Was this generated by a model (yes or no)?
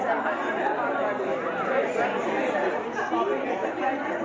no